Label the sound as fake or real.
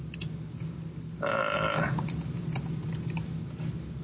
real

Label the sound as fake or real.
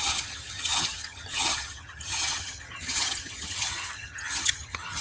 fake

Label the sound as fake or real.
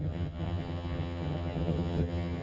fake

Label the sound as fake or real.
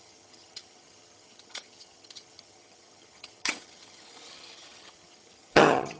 fake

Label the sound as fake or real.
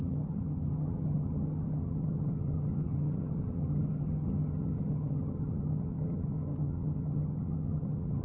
fake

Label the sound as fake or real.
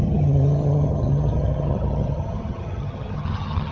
fake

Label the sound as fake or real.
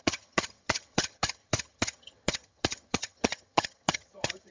fake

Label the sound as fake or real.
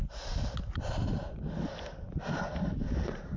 real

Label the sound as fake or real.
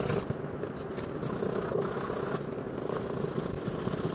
real